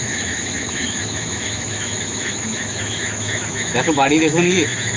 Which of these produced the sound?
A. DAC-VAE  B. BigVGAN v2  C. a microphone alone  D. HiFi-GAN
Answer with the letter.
A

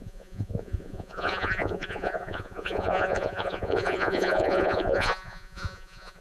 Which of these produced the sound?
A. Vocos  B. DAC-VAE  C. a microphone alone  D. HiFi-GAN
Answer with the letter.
A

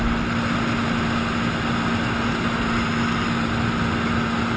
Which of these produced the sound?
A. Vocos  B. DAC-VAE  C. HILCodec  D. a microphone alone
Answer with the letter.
D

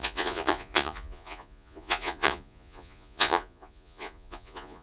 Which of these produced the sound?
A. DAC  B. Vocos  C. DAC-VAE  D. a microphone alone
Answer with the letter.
B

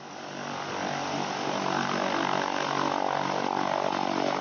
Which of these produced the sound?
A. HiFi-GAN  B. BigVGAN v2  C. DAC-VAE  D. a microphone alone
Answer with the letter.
D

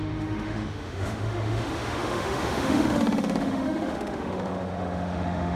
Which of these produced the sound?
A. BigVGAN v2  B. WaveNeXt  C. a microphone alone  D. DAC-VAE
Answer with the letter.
D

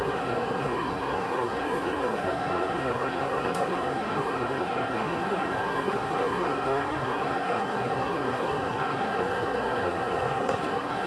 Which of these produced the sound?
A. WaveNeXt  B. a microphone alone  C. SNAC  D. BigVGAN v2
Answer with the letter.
C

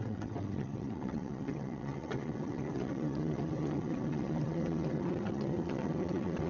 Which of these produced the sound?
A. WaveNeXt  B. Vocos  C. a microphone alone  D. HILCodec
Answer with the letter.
A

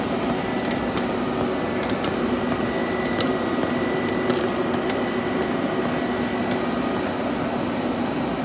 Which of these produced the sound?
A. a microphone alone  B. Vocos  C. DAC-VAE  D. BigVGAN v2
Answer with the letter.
A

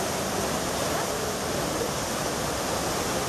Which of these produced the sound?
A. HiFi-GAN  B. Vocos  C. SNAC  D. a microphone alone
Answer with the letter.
D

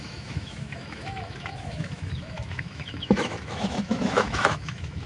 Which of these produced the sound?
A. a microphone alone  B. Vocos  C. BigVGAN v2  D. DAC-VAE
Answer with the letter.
D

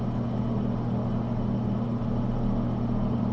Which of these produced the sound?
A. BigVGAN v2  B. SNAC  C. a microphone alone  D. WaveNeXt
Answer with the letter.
C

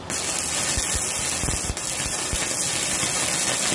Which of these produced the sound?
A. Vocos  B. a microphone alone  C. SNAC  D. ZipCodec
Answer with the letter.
B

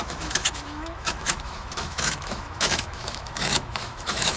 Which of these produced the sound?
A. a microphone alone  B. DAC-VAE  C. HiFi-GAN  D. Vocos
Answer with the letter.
B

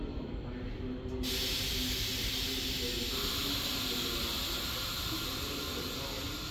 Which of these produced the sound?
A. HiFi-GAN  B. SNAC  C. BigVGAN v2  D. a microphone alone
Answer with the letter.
D